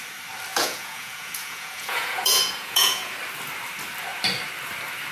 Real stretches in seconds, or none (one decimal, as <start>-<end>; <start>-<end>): 0.0-0.5; 3.1-5.1